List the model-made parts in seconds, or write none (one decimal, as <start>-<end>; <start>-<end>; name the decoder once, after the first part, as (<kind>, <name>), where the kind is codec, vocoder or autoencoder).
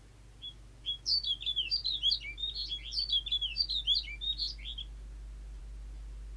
none